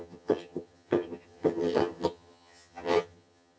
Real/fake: fake